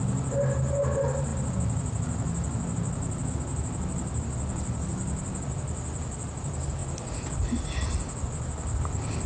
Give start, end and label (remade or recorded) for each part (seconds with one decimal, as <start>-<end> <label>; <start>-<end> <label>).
0.0-9.3 recorded